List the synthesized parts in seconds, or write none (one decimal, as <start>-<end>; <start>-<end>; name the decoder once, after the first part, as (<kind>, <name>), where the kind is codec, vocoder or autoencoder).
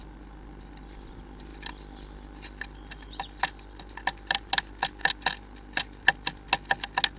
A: none